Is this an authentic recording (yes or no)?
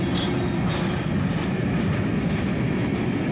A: yes